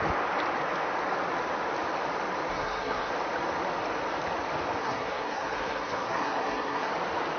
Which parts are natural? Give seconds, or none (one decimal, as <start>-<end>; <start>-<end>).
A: 0.0-2.5; 3.1-4.8; 6.9-7.4